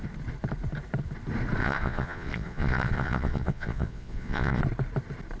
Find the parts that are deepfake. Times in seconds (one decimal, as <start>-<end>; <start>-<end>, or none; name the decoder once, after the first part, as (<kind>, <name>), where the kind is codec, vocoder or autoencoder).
1.6-4.6 (vocoder, Vocos)